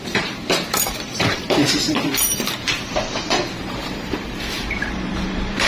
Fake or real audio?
fake